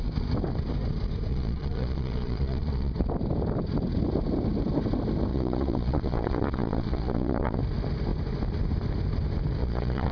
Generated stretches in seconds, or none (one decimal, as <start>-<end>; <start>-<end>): 1.3-2.9; 5.3-7.6; 9.6-10.1